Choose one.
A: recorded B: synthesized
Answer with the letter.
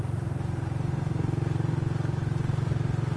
A